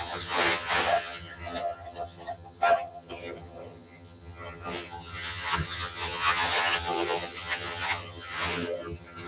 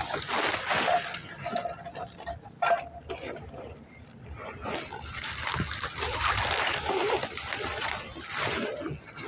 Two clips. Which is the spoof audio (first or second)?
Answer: first